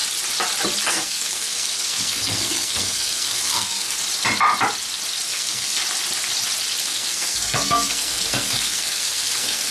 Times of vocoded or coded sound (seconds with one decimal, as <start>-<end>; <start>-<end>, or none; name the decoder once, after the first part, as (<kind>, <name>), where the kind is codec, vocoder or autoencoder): 0.9-4.0 (codec, SNAC); 5.3-5.8; 6.8-9.7